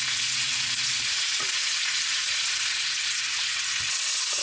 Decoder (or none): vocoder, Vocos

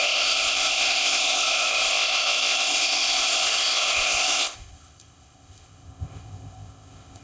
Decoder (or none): codec, ZipCodec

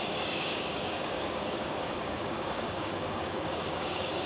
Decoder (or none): codec, DAC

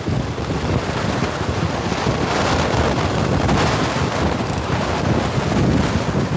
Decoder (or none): none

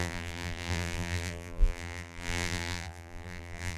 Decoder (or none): vocoder, BigVGAN v2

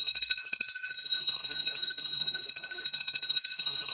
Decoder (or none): codec, SNAC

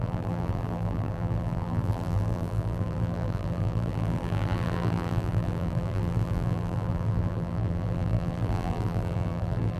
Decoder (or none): vocoder, BigVGAN v2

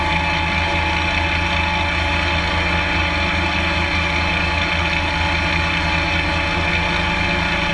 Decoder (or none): none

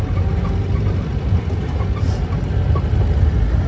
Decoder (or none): none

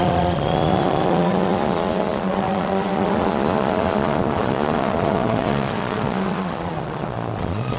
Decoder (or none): vocoder, Vocos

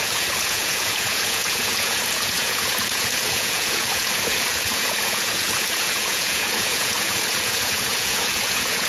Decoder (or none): vocoder, Vocos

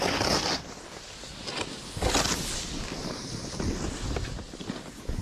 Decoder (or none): none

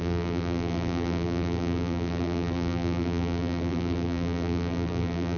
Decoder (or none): vocoder, BigVGAN v2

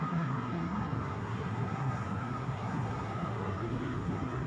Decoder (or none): codec, SNAC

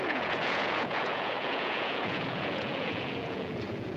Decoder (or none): vocoder, Vocos